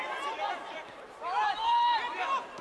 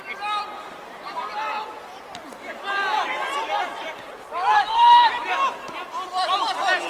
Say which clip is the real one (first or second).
second